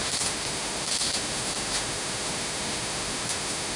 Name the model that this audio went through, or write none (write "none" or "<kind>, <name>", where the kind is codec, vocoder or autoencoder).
autoencoder, DAC-VAE